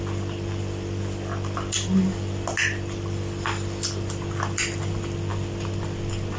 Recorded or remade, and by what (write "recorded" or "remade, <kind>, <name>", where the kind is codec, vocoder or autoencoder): recorded